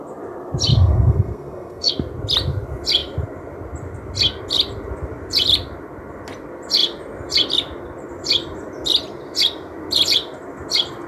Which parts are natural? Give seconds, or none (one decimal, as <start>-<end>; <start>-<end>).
0.0-0.7; 1.9-11.1